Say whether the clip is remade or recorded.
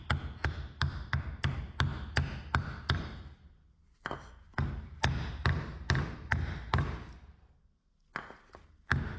recorded